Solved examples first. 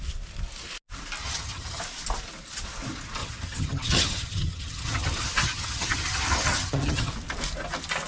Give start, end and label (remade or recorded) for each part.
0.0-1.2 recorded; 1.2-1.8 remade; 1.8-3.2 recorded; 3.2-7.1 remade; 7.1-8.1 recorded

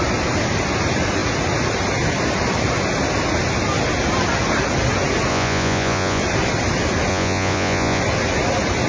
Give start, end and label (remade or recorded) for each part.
0.0-5.3 recorded; 5.3-6.2 remade; 6.2-7.1 recorded; 7.1-8.0 remade; 8.0-8.9 recorded

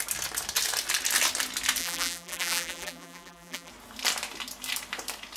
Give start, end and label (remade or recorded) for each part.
0.0-1.8 recorded; 1.8-3.7 remade; 3.7-5.4 recorded

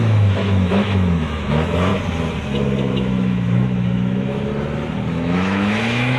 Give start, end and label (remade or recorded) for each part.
0.0-1.9 remade; 1.9-2.9 recorded; 2.9-4.5 remade; 4.5-5.1 recorded; 5.1-6.2 remade

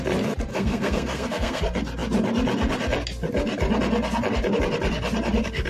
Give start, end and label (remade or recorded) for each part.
0.0-0.5 recorded; 0.5-1.6 remade; 1.6-5.7 recorded

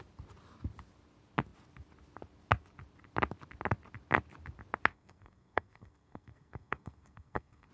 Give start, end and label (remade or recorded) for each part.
0.0-4.9 recorded; 4.9-7.7 remade

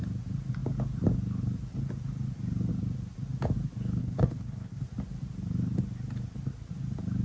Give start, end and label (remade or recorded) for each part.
0.0-4.0 recorded; 4.0-4.8 remade; 4.8-7.2 recorded

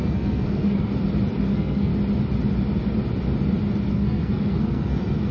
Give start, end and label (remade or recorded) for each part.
0.0-0.9 remade; 0.9-1.5 recorded; 1.5-1.9 remade; 1.9-3.9 recorded; 3.9-5.3 remade